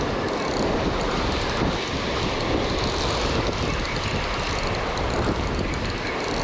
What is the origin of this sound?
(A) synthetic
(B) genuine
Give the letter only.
B